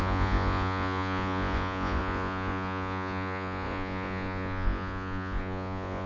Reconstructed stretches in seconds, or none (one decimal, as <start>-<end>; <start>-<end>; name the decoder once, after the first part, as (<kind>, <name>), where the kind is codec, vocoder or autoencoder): 0.0-6.1 (vocoder, Vocos)

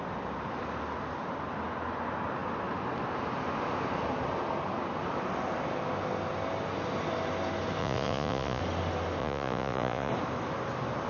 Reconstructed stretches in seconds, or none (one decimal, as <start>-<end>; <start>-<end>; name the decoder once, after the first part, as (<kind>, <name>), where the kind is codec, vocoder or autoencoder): 7.8-8.6 (vocoder, Vocos); 9.2-10.1

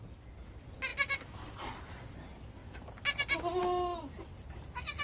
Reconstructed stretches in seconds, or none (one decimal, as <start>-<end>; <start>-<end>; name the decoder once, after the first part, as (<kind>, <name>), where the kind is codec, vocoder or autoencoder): none

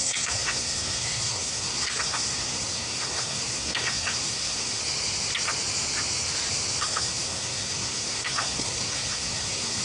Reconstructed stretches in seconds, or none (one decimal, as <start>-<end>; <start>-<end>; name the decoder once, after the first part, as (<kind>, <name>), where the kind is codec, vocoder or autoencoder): 0.0-4.8 (codec, SNAC); 6.8-9.8